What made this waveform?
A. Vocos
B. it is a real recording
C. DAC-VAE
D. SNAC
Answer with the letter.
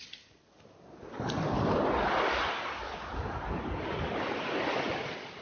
B